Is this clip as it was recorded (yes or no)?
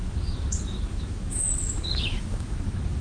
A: no